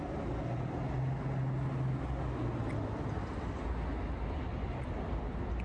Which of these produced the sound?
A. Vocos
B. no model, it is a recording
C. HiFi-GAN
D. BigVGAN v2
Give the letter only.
B